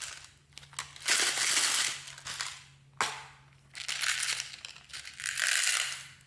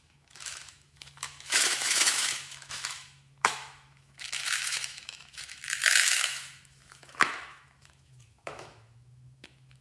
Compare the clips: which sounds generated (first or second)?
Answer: second